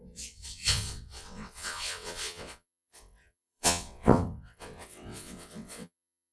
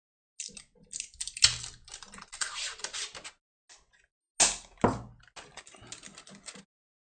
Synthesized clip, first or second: first